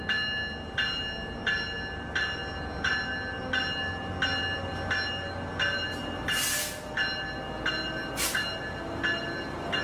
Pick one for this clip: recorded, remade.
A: recorded